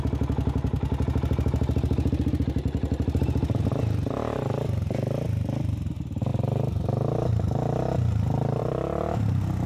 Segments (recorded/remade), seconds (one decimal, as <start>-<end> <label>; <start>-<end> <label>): 0.0-8.6 recorded; 8.6-9.2 remade; 9.2-9.7 recorded